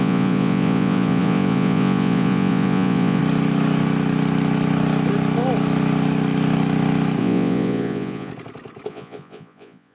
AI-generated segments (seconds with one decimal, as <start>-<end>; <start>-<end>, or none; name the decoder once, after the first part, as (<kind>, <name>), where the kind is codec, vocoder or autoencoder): 0.0-3.2 (vocoder, Vocos); 7.2-8.3; 8.9-9.9